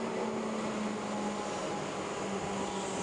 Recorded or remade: recorded